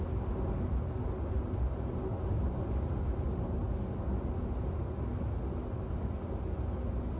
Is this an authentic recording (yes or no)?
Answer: yes